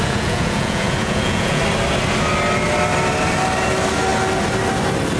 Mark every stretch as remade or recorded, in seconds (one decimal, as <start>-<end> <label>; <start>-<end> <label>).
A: 0.0-1.6 remade; 1.6-5.2 recorded